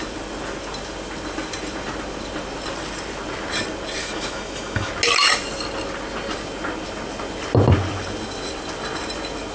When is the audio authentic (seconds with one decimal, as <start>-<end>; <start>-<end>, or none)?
0.0-4.0; 4.9-9.5